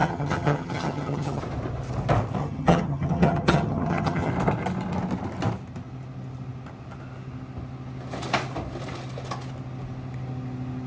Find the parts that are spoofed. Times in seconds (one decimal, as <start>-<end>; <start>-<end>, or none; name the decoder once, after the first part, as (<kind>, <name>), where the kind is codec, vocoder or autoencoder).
0.0-1.4 (vocoder, HiFi-GAN); 2.4-4.3